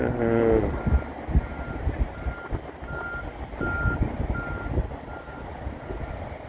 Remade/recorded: recorded